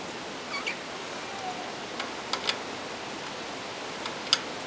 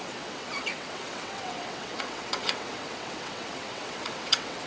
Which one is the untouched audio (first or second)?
first